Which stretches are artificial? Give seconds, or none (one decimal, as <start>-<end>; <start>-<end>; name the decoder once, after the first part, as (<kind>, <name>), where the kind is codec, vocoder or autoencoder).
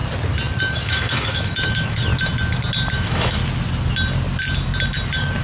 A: 0.6-2.1 (autoencoder, DAC-VAE); 2.9-3.4